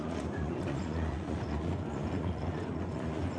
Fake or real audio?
fake